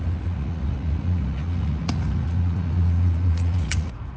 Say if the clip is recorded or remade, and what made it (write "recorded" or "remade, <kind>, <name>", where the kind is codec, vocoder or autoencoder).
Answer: remade, vocoder, Vocos